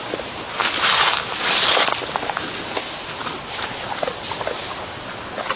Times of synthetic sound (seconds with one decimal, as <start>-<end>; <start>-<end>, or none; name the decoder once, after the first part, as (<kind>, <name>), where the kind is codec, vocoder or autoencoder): none